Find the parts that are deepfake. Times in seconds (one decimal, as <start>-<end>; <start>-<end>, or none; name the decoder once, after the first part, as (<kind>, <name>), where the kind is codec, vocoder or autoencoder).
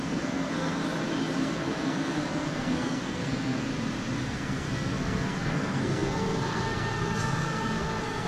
0.0-0.8 (codec, SNAC); 1.4-3.7; 4.2-8.3